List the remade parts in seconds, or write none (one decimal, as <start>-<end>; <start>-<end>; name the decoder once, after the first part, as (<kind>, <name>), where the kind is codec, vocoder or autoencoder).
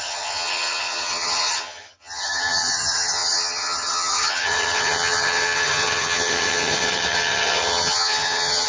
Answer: 0.0-8.7 (vocoder, HiFi-GAN)